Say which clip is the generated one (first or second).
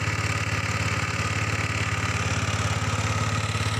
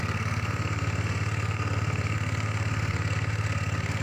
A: second